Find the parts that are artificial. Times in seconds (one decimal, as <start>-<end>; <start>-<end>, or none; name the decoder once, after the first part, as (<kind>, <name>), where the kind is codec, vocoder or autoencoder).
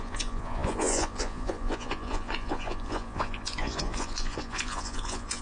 0.0-5.4 (vocoder, Vocos)